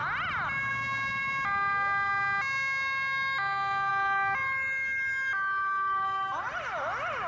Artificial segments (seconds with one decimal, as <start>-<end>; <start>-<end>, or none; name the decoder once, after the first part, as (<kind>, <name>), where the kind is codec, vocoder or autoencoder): none